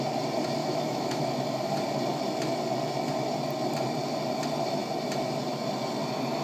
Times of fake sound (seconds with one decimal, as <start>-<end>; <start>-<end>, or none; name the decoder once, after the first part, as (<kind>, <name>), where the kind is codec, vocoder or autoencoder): 0.6-1.3 (autoencoder, DAC-VAE)